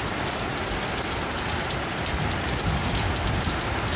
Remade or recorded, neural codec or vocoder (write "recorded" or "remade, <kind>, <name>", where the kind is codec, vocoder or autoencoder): recorded